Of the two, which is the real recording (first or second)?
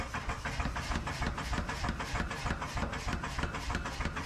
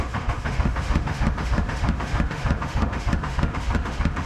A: first